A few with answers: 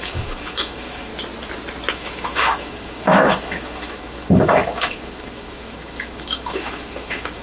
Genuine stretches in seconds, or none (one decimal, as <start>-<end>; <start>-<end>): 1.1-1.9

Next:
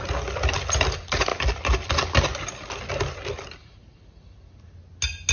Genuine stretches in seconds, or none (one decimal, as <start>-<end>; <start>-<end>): 0.0-5.3

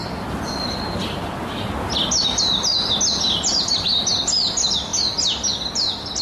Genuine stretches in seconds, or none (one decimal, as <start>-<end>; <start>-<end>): 0.0-6.2

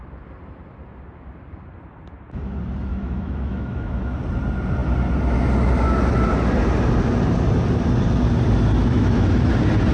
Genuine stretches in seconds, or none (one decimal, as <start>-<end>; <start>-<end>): 0.0-2.9; 4.2-8.8; 9.5-9.9

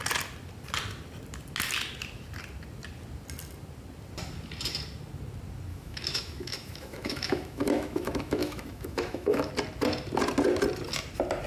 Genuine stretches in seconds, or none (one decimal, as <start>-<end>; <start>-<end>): 0.0-5.7; 9.5-11.5